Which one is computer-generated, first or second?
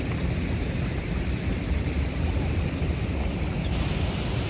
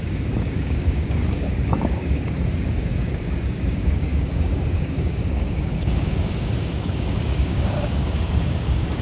second